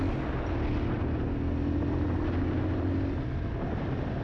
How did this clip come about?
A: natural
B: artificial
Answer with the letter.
A